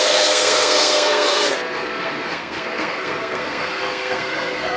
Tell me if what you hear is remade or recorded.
remade